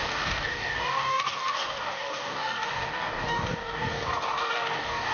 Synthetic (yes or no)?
yes